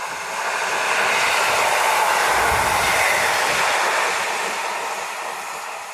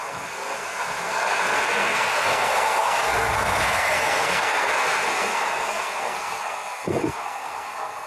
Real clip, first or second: first